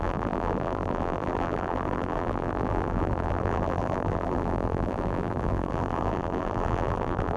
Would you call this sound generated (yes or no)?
yes